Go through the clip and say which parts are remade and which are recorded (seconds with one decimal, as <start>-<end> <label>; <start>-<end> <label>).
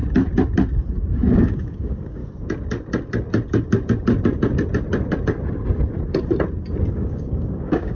0.0-1.1 recorded; 1.1-2.2 remade; 2.2-6.9 recorded; 6.9-7.9 remade